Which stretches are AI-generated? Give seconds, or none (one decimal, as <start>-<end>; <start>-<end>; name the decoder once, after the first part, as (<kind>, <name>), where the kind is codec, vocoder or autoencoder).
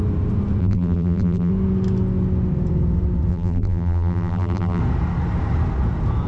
0.6-1.5 (vocoder, BigVGAN v2); 3.3-4.8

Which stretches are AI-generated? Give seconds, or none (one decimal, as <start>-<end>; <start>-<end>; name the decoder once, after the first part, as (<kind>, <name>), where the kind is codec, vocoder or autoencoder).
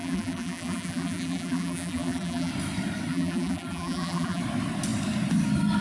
0.0-2.5 (vocoder, BigVGAN v2); 3.1-4.4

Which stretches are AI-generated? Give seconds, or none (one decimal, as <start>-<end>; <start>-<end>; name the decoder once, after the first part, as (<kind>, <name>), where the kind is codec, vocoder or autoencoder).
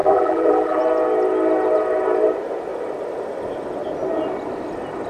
0.0-0.8 (vocoder, BigVGAN v2)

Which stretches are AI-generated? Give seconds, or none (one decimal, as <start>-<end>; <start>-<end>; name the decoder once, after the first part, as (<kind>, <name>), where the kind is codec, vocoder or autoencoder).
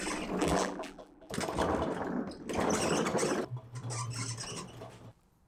0.4-1.3 (vocoder, BigVGAN v2)